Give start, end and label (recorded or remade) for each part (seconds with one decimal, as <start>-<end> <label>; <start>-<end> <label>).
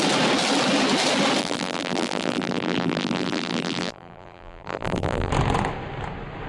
0.0-1.4 recorded; 1.4-5.3 remade; 5.3-6.5 recorded